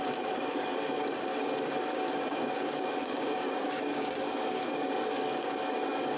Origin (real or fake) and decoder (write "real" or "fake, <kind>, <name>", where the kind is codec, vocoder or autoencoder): fake, codec, DAC